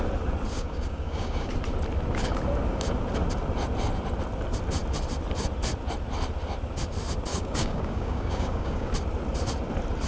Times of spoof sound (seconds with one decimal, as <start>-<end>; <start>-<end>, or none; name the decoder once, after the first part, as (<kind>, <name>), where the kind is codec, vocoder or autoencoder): 0.5-1.5 (codec, DAC); 7.3-8.9

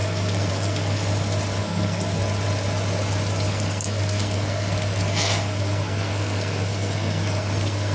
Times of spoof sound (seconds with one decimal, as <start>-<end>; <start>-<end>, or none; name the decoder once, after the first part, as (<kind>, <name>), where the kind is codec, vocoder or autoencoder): 0.0-1.0 (codec, SNAC); 1.6-2.0; 3.5-7.9

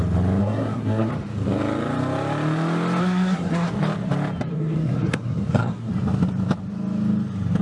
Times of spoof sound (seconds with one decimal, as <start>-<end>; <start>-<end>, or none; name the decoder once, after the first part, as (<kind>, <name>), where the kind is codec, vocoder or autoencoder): 0.4-1.1 (codec, SNAC); 3.0-3.7; 4.5-5.9

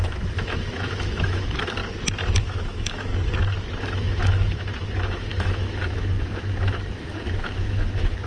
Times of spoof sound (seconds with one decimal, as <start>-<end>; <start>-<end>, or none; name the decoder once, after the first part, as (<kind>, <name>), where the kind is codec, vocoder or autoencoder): 0.0-1.8 (autoencoder, DAC-VAE); 2.4-3.1; 3.8-8.3

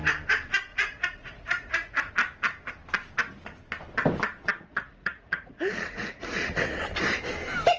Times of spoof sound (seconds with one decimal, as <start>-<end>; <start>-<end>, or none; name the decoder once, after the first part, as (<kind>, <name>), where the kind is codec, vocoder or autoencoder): 0.7-2.1 (vocoder, Vocos); 4.7-6.8

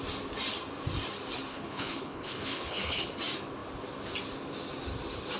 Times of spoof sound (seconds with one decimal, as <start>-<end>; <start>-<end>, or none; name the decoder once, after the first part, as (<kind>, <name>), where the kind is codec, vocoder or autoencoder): 1.5-3.2 (codec, HILCodec)

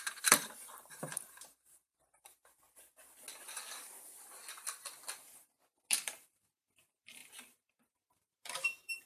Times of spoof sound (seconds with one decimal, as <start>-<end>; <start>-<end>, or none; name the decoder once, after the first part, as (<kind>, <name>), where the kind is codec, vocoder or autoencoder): 0.0-1.9 (vocoder, BigVGAN v2); 5.9-9.1

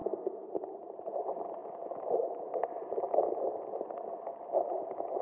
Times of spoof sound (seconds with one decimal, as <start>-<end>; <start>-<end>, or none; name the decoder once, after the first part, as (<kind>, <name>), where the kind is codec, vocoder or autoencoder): 0.0-1.1 (vocoder, BigVGAN v2)